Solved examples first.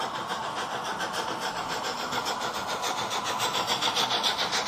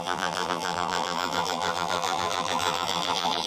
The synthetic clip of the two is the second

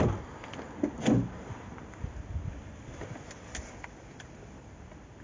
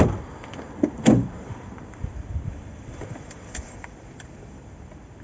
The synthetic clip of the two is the second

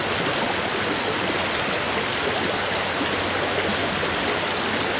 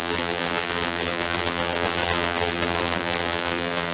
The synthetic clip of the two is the second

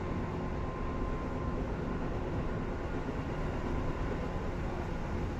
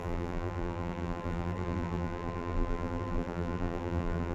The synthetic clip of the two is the second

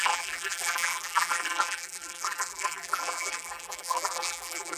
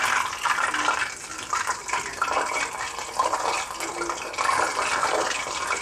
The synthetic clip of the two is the first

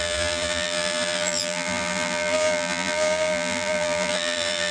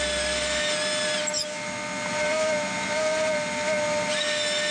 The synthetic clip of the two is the first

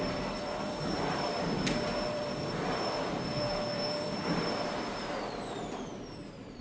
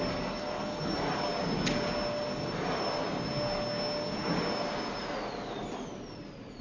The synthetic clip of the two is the first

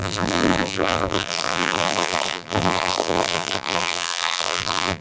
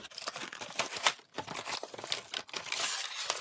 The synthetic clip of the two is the first